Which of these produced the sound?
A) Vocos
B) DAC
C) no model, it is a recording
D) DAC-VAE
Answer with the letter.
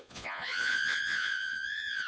A